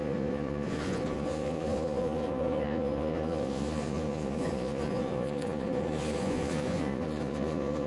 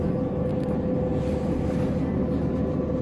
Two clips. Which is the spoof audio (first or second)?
first